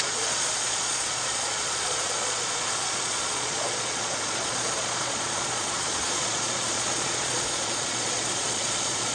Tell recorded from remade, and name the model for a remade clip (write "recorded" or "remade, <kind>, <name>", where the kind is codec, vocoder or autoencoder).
remade, vocoder, Vocos